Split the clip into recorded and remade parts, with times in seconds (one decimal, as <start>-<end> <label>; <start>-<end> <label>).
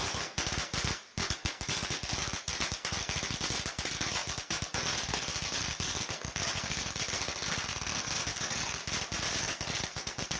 0.0-8.8 remade; 8.8-9.4 recorded; 9.4-10.4 remade